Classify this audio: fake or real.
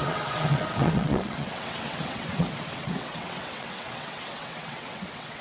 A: fake